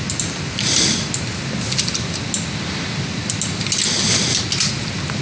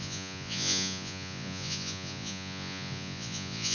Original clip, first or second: first